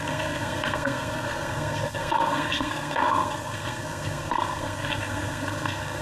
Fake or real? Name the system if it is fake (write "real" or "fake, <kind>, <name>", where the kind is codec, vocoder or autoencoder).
fake, codec, SNAC